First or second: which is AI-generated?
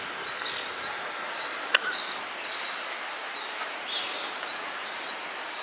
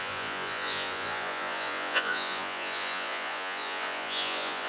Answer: second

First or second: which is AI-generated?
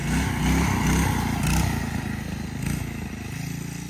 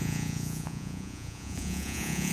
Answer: second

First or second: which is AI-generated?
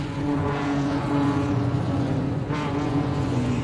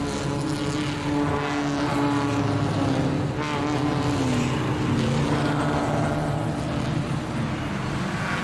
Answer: first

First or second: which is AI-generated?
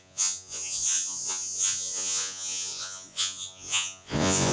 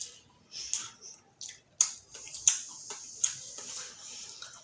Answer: first